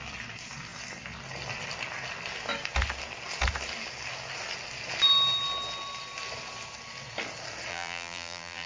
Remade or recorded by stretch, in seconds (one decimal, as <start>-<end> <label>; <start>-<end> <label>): 0.0-7.7 recorded; 7.7-8.7 remade